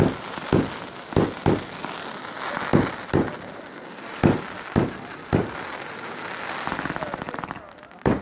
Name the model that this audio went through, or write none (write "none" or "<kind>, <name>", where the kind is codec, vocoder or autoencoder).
none